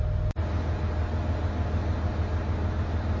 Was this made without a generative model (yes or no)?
yes